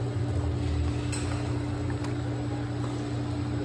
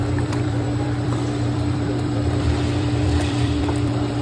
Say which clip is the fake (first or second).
second